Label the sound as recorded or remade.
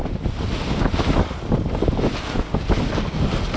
recorded